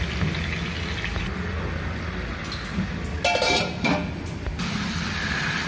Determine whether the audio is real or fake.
real